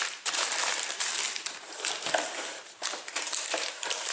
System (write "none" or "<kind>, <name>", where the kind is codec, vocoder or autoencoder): vocoder, BigVGAN v2